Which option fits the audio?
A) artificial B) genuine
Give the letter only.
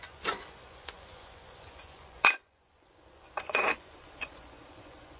A